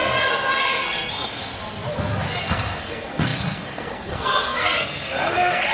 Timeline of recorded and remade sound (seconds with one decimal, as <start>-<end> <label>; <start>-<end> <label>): 0.0-1.5 remade; 1.5-2.4 recorded; 2.4-5.7 remade